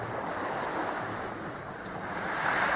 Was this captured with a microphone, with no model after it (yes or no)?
yes